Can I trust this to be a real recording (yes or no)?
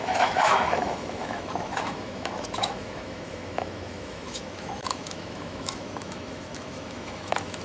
no